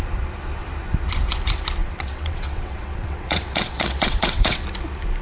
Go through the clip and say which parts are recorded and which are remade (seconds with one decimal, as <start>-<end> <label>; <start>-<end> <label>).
0.0-1.8 recorded; 1.8-4.6 remade; 4.6-5.2 recorded

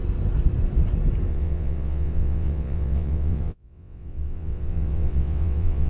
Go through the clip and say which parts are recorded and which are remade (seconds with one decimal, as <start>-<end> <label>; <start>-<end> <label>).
0.0-1.3 recorded; 1.3-5.9 remade

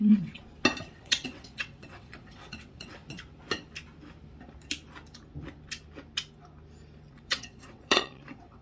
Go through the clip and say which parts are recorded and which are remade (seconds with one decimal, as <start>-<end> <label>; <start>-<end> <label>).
0.0-0.4 remade; 0.4-1.0 recorded; 1.0-3.0 remade; 3.0-7.1 recorded; 7.1-8.6 remade

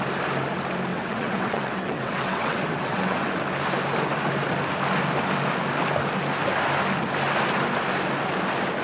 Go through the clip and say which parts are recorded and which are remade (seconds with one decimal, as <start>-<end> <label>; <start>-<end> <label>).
0.0-0.9 recorded; 0.9-3.3 remade; 3.3-8.8 recorded

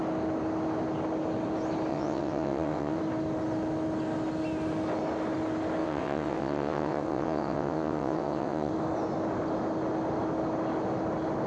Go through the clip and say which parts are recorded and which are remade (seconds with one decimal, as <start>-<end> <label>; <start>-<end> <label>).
0.0-1.9 recorded; 1.9-3.0 remade; 3.0-5.8 recorded; 5.8-8.7 remade; 8.7-11.5 recorded

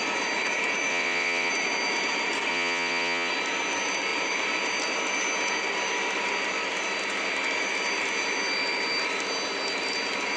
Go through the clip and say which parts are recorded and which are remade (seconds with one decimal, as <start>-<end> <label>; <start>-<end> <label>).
0.0-0.9 recorded; 0.9-1.5 remade; 1.5-2.5 recorded; 2.5-3.3 remade; 3.3-10.4 recorded

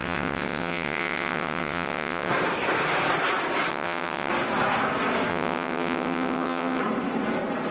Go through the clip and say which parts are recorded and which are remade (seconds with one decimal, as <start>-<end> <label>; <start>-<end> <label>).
0.0-2.3 remade; 2.3-3.7 recorded; 3.7-4.3 remade; 4.3-5.3 recorded; 5.3-6.8 remade; 6.8-7.7 recorded

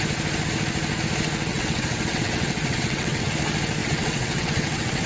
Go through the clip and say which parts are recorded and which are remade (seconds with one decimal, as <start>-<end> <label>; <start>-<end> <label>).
0.0-1.5 recorded; 1.5-3.3 remade; 3.3-3.8 recorded; 3.8-5.1 remade